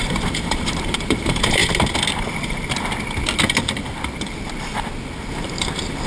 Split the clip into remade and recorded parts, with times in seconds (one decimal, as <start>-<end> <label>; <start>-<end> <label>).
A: 0.0-1.6 remade; 1.6-5.3 recorded; 5.3-6.1 remade